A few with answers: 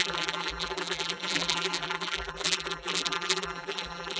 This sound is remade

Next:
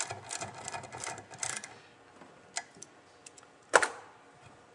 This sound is recorded